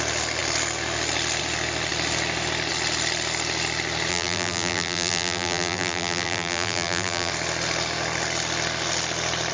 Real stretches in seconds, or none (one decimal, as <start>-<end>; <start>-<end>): 0.0-4.1; 7.3-9.5